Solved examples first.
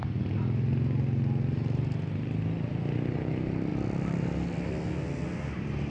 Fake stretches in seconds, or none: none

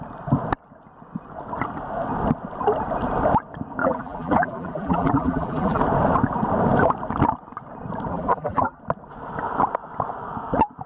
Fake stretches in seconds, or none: 3.8-5.8; 8.1-8.8

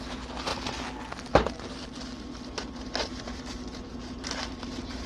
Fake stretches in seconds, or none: 0.0-0.5; 2.5-5.1

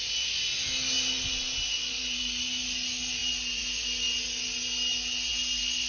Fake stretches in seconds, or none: none